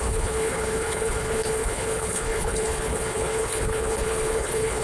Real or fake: fake